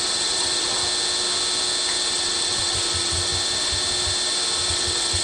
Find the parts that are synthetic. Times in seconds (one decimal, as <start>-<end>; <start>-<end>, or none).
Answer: 0.0-0.8; 2.1-3.3; 4.7-5.2